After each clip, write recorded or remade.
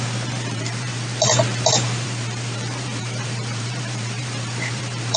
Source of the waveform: remade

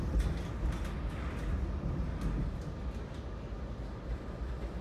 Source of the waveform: recorded